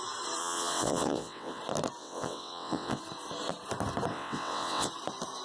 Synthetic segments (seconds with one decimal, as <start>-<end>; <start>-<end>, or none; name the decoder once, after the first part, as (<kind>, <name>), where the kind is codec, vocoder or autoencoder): 0.4-1.6 (vocoder, WaveNeXt); 2.0-3.0; 4.1-4.9